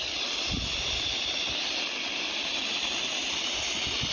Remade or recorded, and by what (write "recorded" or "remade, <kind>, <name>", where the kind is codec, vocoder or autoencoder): recorded